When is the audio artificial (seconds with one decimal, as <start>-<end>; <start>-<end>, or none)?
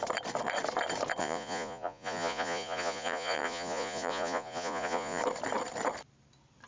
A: 1.2-5.2